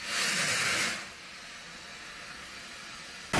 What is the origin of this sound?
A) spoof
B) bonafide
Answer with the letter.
B